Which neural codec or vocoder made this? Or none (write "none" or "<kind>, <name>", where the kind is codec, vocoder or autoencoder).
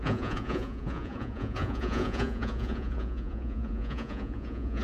vocoder, Vocos